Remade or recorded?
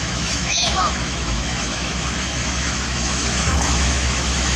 remade